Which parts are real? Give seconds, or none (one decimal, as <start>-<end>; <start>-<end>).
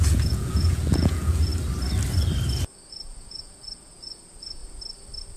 1.5-2.9; 4.6-5.4